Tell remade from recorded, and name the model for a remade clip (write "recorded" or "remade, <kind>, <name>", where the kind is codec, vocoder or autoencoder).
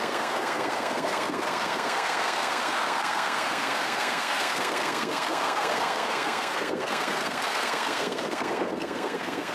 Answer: remade, codec, SNAC